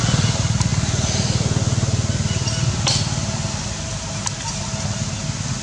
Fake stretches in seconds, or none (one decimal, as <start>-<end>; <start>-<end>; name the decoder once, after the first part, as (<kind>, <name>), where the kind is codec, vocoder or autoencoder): none